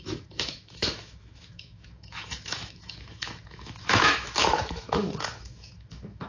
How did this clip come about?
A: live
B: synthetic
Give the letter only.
B